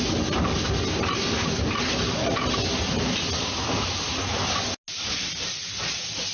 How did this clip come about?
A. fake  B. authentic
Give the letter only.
B